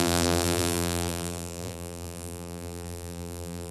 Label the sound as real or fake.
fake